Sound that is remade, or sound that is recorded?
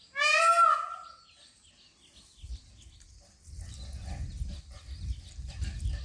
recorded